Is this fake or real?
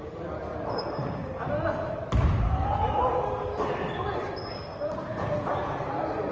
real